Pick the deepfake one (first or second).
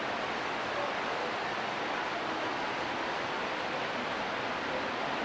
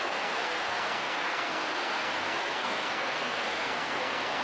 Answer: second